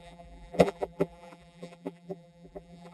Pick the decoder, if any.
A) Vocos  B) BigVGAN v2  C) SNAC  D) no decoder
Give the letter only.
B